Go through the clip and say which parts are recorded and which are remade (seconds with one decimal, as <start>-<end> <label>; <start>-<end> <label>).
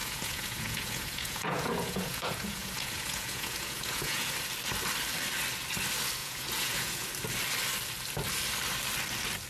0.0-4.3 remade; 4.3-6.2 recorded; 6.2-7.1 remade; 7.1-9.5 recorded